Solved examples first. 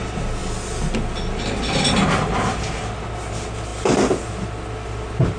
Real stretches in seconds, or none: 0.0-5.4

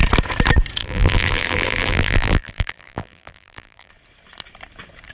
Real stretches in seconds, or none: 0.0-0.8; 3.9-5.1

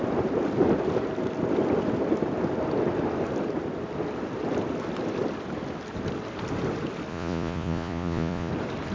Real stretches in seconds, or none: 0.0-7.1; 8.5-8.9

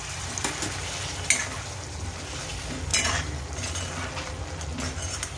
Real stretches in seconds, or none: 0.0-5.4

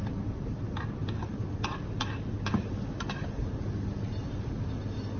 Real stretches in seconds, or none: 0.0-5.2

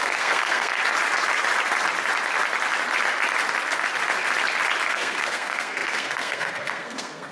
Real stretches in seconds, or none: 0.8-4.9

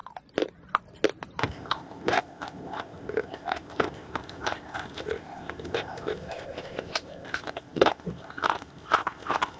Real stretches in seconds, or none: 0.0-1.4